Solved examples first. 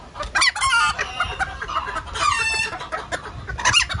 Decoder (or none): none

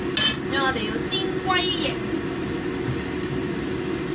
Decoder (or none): none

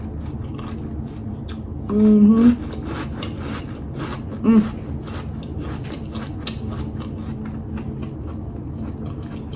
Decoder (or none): none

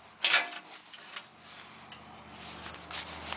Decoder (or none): none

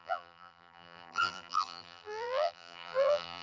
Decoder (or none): vocoder, BigVGAN v2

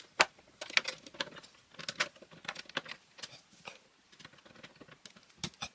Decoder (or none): none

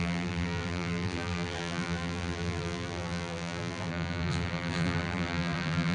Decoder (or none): vocoder, BigVGAN v2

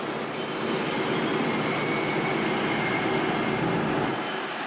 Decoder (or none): none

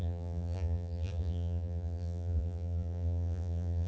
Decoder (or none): vocoder, BigVGAN v2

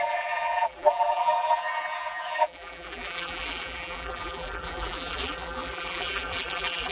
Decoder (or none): vocoder, BigVGAN v2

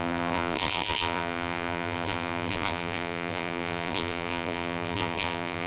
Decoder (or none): vocoder, BigVGAN v2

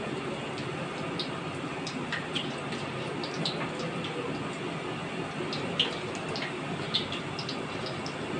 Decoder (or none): none